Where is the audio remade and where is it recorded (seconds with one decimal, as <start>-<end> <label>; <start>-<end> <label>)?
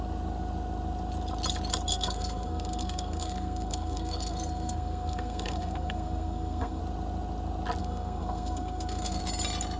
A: 0.0-1.9 recorded; 1.9-6.8 remade; 6.8-7.8 recorded; 7.8-9.2 remade; 9.2-9.8 recorded